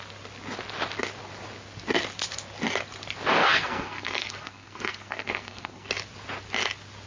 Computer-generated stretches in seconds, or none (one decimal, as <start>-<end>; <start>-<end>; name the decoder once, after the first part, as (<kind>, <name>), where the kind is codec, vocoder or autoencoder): 3.4-5.9 (codec, SNAC)